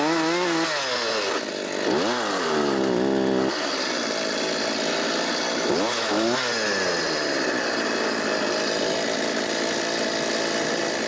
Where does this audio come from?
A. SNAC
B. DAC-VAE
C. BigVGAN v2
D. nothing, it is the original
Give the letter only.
D